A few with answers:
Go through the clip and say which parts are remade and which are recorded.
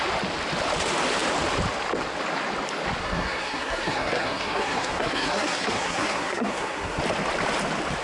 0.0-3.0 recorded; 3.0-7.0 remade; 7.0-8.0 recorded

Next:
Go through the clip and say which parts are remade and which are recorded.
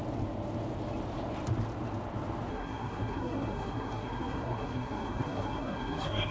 0.0-2.5 recorded; 2.5-6.3 remade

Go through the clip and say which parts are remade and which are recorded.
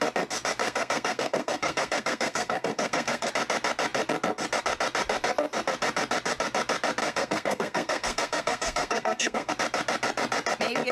0.0-0.6 recorded; 0.6-3.3 remade; 3.3-7.0 recorded; 7.0-9.5 remade; 9.5-10.9 recorded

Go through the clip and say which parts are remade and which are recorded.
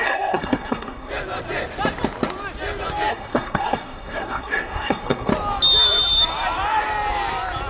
0.0-1.1 remade; 1.1-3.1 recorded; 3.1-5.3 remade; 5.3-7.7 recorded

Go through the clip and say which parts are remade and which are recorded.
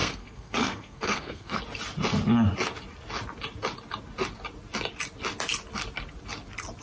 0.0-1.6 remade; 1.6-6.8 recorded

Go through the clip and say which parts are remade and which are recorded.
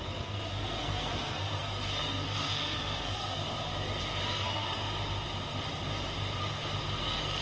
0.0-3.4 remade; 3.4-4.3 recorded; 4.3-4.8 remade; 4.8-7.0 recorded; 7.0-7.4 remade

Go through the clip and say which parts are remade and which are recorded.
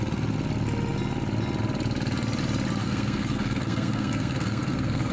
0.0-2.8 recorded; 2.8-5.1 remade